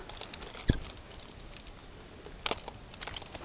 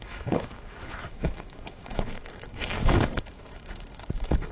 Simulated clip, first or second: second